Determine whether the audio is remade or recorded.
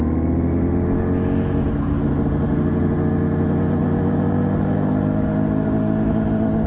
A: recorded